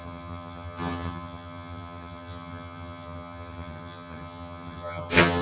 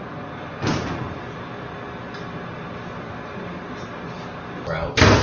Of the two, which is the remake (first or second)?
first